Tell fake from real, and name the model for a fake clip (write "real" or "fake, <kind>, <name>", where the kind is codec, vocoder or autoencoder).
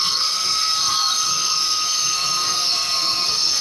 fake, codec, SNAC